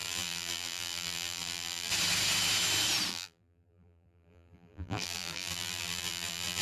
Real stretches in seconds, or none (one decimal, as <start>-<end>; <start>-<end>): 1.9-3.1